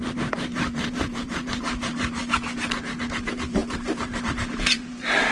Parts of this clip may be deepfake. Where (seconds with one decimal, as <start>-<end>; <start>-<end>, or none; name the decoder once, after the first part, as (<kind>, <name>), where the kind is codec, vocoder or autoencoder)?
0.0-2.2 (vocoder, BigVGAN v2); 3.0-5.3